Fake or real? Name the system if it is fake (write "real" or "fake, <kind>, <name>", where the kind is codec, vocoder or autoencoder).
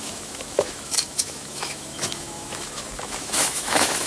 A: fake, autoencoder, DAC-VAE